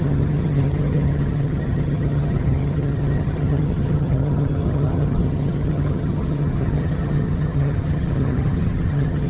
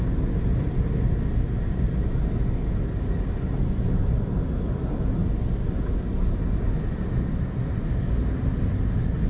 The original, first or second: second